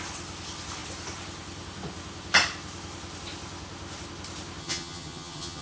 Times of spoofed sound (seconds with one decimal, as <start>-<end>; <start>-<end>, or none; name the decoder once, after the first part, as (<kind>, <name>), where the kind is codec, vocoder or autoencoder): 4.6-5.6 (vocoder, HiFi-GAN)